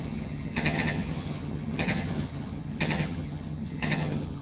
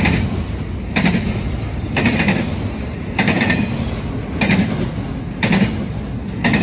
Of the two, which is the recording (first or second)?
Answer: second